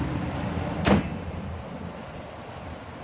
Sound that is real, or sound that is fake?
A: real